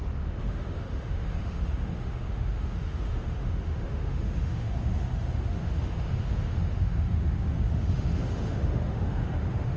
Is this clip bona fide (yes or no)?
no